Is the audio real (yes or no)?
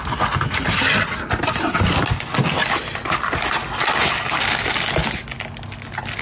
yes